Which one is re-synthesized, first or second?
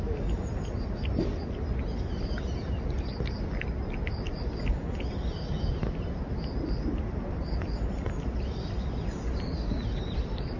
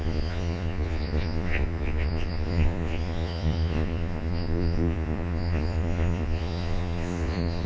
second